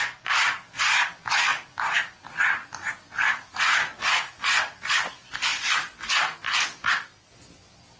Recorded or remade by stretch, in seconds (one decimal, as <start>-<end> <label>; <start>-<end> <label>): 0.0-3.3 recorded; 3.3-3.8 remade; 3.8-8.0 recorded